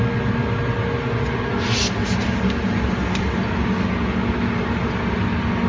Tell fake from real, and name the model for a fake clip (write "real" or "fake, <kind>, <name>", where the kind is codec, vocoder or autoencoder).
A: real